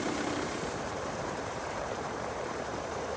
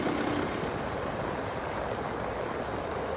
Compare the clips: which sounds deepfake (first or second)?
first